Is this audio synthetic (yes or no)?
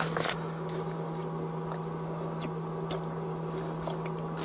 no